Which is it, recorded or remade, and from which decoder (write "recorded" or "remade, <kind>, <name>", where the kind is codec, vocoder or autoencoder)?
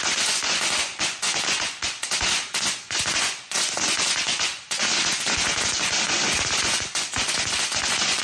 remade, vocoder, Vocos